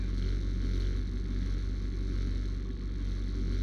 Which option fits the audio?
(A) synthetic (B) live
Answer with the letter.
B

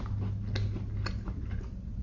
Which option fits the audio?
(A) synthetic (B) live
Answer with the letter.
B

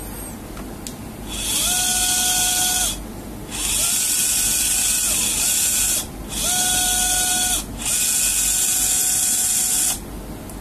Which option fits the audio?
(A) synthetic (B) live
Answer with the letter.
B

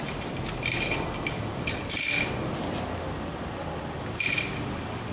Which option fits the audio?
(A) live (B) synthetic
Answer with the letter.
A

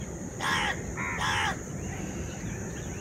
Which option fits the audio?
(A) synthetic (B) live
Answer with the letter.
B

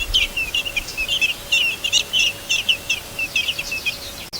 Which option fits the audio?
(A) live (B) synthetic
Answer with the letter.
A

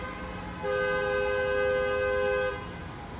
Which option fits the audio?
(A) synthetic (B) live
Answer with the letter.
B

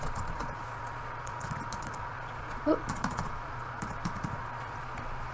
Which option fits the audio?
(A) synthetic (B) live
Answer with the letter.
A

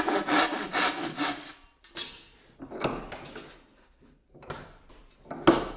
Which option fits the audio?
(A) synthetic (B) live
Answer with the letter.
B